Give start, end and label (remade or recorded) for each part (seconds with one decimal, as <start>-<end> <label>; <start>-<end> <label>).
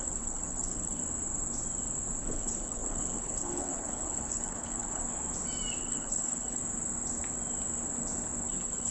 0.0-1.0 remade; 1.0-2.2 recorded; 2.2-5.0 remade; 5.0-5.8 recorded; 5.8-6.6 remade; 6.6-8.5 recorded; 8.5-8.9 remade